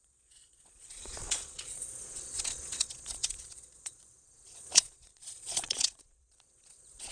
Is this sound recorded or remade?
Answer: remade